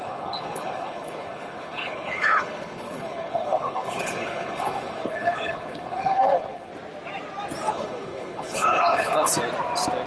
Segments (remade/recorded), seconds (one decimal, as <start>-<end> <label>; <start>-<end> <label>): 0.0-6.7 remade; 6.7-7.7 recorded; 7.7-9.3 remade; 9.3-10.1 recorded